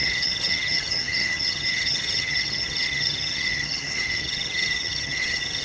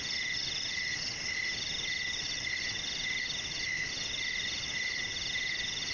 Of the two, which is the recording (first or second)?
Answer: second